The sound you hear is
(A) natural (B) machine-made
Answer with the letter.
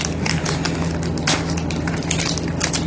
A